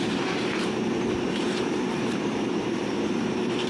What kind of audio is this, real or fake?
fake